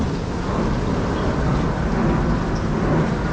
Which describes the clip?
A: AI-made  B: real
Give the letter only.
B